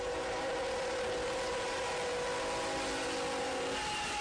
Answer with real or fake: real